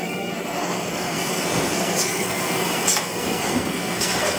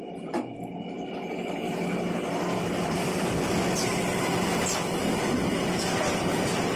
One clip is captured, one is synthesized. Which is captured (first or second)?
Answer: second